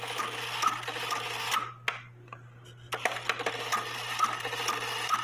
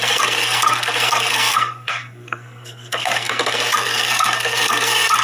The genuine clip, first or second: first